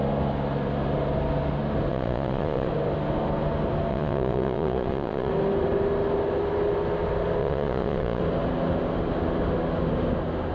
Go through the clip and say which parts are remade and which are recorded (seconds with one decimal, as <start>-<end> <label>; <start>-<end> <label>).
0.0-1.9 recorded; 1.9-2.7 remade; 2.7-3.9 recorded; 3.9-5.3 remade; 5.3-7.4 recorded; 7.4-8.2 remade; 8.2-10.5 recorded